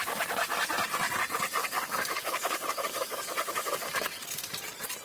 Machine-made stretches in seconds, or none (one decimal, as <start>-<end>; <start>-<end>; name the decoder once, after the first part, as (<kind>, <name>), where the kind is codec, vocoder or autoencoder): 1.6-4.5 (codec, DAC)